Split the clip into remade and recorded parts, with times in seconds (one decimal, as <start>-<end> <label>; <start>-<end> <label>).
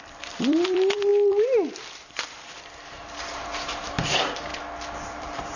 0.0-4.5 remade; 4.5-5.1 recorded; 5.1-5.6 remade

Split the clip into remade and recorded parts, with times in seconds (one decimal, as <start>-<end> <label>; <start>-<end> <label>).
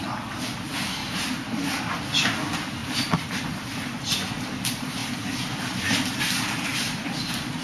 0.0-1.0 recorded; 1.0-1.6 remade; 1.6-2.8 recorded; 2.8-3.4 remade; 3.4-7.6 recorded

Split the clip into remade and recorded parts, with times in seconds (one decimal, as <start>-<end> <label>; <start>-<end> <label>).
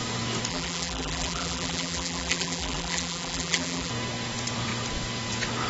0.0-0.5 recorded; 0.5-3.9 remade; 3.9-5.7 recorded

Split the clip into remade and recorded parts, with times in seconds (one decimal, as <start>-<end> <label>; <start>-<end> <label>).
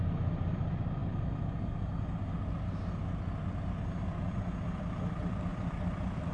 0.0-5.5 recorded; 5.5-6.3 remade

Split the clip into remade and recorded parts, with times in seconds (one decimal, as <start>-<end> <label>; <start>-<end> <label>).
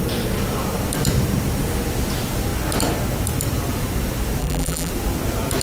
0.0-4.4 recorded; 4.4-4.9 remade; 4.9-5.6 recorded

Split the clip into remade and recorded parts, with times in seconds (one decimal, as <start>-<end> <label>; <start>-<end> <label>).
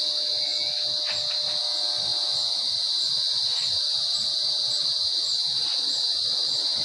0.0-6.8 recorded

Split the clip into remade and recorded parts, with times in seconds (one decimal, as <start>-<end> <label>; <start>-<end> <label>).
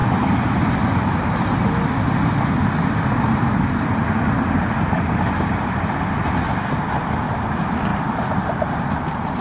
0.0-4.0 recorded; 4.0-6.2 remade; 6.2-7.9 recorded; 7.9-8.8 remade; 8.8-9.4 recorded